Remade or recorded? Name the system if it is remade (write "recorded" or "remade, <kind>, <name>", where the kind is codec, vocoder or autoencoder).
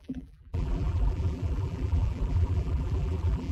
remade, vocoder, BigVGAN v2